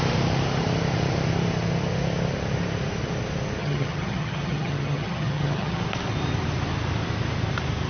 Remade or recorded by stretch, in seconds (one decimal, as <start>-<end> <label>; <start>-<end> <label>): 0.0-3.6 recorded; 3.6-5.8 remade; 5.8-7.9 recorded